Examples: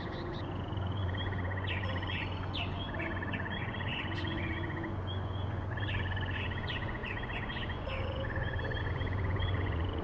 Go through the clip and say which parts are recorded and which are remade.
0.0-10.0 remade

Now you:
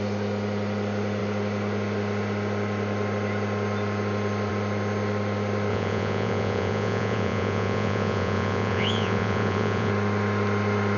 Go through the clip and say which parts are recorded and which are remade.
0.0-5.7 recorded; 5.7-9.9 remade; 9.9-11.0 recorded

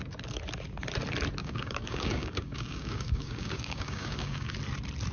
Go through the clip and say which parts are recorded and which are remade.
0.0-1.4 recorded; 1.4-4.5 remade; 4.5-5.1 recorded

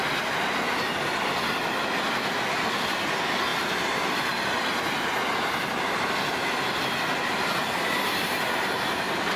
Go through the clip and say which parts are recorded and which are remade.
0.0-9.4 recorded

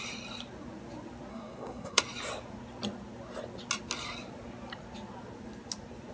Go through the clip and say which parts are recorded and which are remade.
0.0-1.3 recorded; 1.3-2.0 remade; 2.0-6.1 recorded

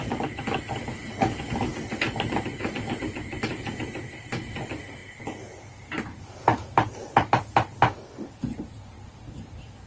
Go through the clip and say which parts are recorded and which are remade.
0.0-9.9 remade

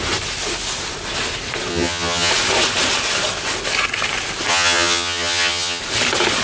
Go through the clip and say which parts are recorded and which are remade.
0.0-1.7 recorded; 1.7-2.3 remade; 2.3-4.5 recorded; 4.5-5.8 remade; 5.8-6.4 recorded

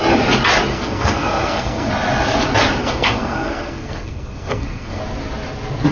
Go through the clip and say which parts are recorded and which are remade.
0.0-0.7 recorded; 0.7-1.9 remade; 1.9-2.8 recorded; 2.8-5.0 remade; 5.0-5.9 recorded